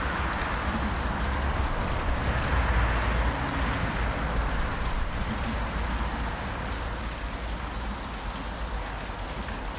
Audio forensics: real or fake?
real